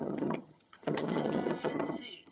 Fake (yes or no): yes